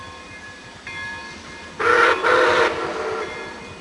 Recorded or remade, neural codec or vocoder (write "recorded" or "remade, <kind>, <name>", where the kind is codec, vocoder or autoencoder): recorded